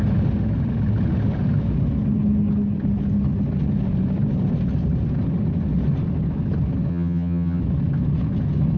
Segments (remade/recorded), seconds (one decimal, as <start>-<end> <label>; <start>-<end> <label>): 0.0-6.9 recorded; 6.9-7.6 remade; 7.6-8.8 recorded